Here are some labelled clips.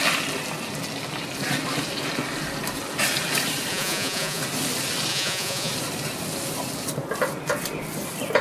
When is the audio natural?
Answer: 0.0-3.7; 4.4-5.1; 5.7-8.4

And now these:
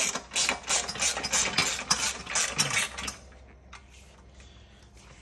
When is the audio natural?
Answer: 0.0-5.2

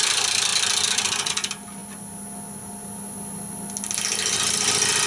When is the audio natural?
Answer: 0.0-5.1

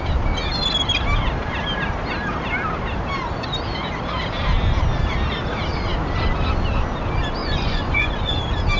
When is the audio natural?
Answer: 0.0-7.4; 8.4-8.8